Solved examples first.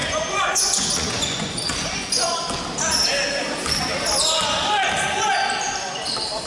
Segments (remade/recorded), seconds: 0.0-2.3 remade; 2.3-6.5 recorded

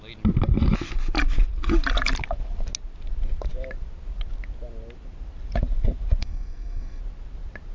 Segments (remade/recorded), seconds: 0.0-6.2 recorded; 6.2-7.0 remade; 7.0-7.7 recorded

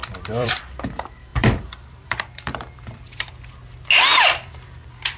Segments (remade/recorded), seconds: 0.0-0.6 remade; 0.6-1.3 recorded; 1.3-3.5 remade; 3.5-4.1 recorded; 4.1-5.2 remade

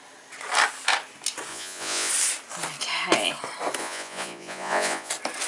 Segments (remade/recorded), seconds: 0.0-1.5 recorded; 1.5-2.1 remade; 2.1-3.8 recorded; 3.8-5.1 remade; 5.1-5.5 recorded

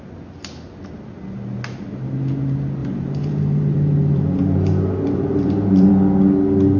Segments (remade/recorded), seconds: 0.0-2.8 recorded; 2.8-5.9 remade; 5.9-6.8 recorded

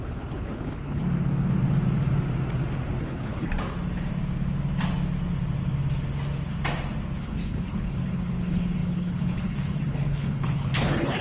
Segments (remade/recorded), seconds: 0.0-1.0 remade; 1.0-3.0 recorded; 3.0-3.5 remade; 3.5-7.2 recorded; 7.2-11.2 remade

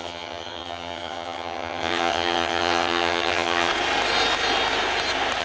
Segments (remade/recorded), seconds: 0.0-3.7 remade; 3.7-5.4 recorded

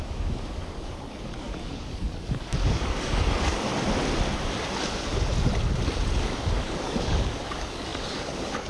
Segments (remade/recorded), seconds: 0.0-3.7 remade; 3.7-6.2 recorded; 6.2-8.7 remade